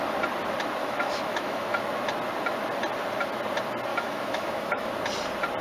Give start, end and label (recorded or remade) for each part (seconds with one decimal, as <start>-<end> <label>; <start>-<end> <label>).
0.0-0.8 recorded; 0.8-1.8 remade; 1.8-3.9 recorded; 3.9-4.9 remade; 4.9-5.6 recorded